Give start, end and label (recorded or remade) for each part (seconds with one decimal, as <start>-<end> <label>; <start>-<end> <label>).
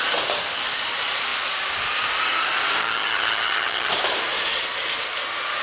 0.0-2.8 recorded; 2.8-3.9 remade; 3.9-5.6 recorded